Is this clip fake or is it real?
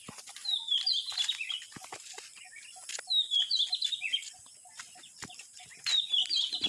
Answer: real